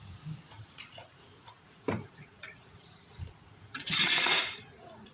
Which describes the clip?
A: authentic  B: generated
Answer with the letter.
B